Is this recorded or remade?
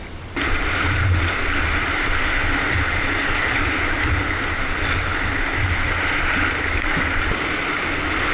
recorded